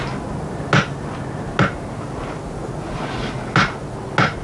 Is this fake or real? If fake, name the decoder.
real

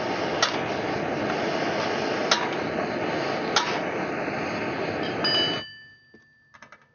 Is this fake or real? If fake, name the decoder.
real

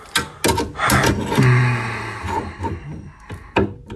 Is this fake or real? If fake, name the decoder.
real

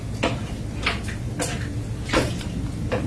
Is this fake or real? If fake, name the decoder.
real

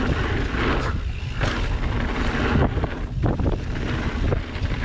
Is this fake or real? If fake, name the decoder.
real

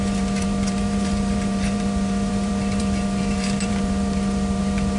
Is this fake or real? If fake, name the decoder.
fake, vocoder, BigVGAN v2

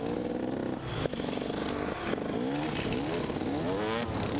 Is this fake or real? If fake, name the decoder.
real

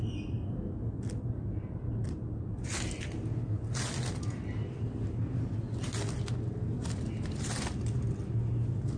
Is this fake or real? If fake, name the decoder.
real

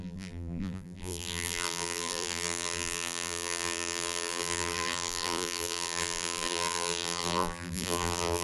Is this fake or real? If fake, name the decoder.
fake, vocoder, BigVGAN v2